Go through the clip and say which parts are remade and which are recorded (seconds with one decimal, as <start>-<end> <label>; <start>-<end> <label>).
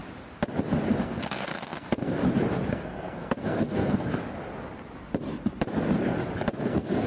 0.0-1.0 recorded; 1.0-2.2 remade; 2.2-2.7 recorded; 2.7-4.1 remade; 4.1-6.6 recorded; 6.6-7.1 remade